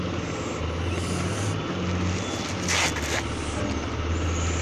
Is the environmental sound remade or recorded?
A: recorded